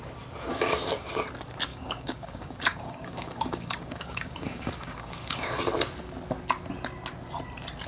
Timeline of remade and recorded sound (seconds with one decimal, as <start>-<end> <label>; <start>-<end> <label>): 0.0-0.5 recorded; 0.5-1.1 remade; 1.1-1.7 recorded; 1.7-5.6 remade; 5.6-7.9 recorded